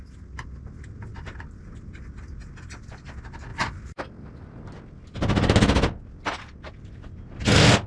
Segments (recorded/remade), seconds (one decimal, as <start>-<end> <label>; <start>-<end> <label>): 0.0-3.5 recorded; 3.5-4.0 remade; 4.0-7.9 recorded

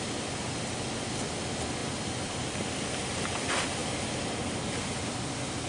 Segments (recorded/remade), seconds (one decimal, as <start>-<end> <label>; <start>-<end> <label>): 0.0-5.7 recorded

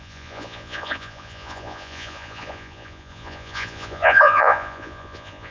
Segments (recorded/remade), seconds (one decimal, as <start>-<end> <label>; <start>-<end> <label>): 0.0-5.5 remade